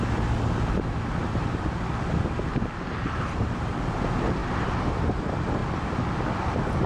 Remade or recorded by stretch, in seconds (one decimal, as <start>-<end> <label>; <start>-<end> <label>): 0.0-6.9 recorded